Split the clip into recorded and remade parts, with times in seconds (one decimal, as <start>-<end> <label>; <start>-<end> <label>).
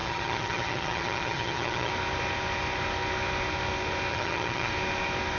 0.0-1.9 remade; 1.9-4.1 recorded; 4.1-4.7 remade; 4.7-5.4 recorded